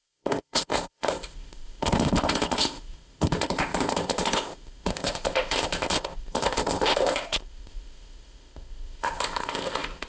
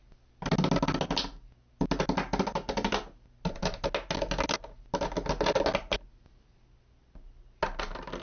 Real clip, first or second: second